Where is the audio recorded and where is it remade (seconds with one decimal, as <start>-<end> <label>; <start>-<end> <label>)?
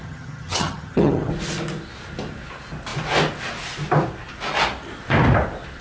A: 0.0-1.3 remade; 1.3-5.8 recorded